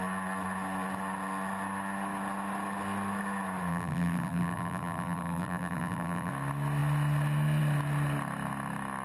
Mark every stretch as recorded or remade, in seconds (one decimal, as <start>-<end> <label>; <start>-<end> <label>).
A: 0.0-3.7 recorded; 3.7-6.3 remade; 6.3-9.0 recorded